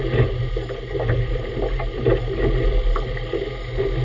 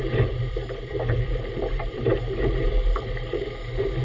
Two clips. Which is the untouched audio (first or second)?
first